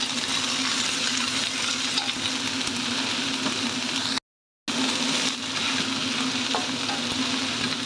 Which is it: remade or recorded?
recorded